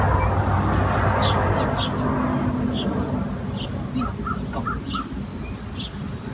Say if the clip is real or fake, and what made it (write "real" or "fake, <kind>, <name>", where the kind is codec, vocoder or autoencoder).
real